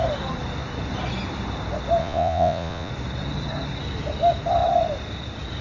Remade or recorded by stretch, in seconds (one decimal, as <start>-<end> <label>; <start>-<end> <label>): 0.0-2.0 recorded; 2.0-2.9 remade; 2.9-5.6 recorded